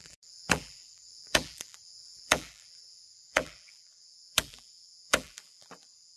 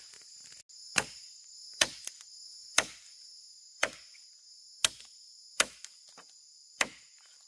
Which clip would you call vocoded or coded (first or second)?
first